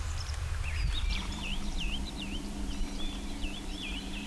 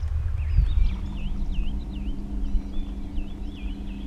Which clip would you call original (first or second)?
second